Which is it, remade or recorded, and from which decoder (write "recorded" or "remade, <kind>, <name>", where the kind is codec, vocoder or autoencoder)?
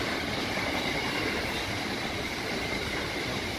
remade, vocoder, BigVGAN v2